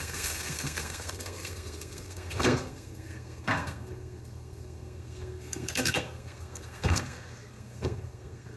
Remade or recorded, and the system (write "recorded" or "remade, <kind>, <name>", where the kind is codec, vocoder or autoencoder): remade, codec, SNAC